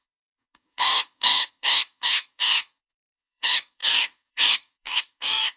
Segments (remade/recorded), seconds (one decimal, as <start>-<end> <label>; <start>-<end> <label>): 0.0-5.6 remade